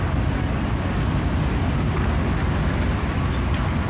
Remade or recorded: recorded